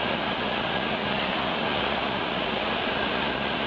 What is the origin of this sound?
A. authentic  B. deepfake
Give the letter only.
B